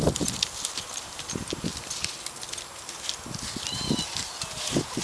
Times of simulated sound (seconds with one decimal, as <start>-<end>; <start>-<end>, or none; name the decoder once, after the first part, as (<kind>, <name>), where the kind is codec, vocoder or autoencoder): none